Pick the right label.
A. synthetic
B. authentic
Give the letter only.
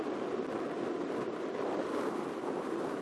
B